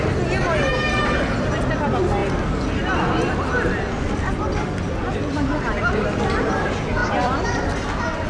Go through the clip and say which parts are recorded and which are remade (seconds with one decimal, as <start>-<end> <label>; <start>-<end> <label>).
0.0-7.0 recorded; 7.0-8.3 remade

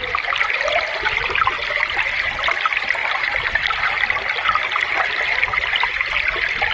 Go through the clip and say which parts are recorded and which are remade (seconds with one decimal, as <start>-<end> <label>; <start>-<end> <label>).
0.0-6.7 recorded

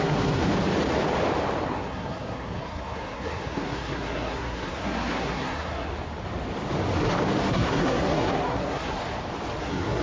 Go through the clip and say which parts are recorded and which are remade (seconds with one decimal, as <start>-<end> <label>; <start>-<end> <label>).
0.0-0.4 remade; 0.4-1.7 recorded; 1.7-5.9 remade; 5.9-7.5 recorded; 7.5-9.0 remade; 9.0-9.6 recorded; 9.6-10.0 remade

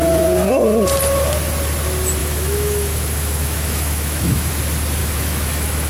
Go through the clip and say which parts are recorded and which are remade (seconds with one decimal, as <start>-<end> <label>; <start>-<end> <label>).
0.0-2.2 recorded; 2.2-4.5 remade; 4.5-5.0 recorded; 5.0-5.9 remade

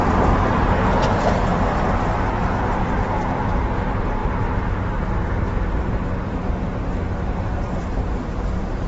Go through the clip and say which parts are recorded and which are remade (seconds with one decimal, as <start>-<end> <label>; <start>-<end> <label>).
0.0-1.5 remade; 1.5-2.6 recorded; 2.6-8.9 remade